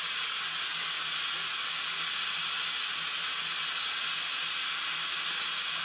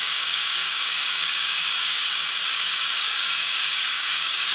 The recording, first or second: first